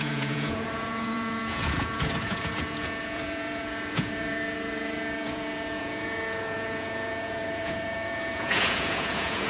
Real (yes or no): no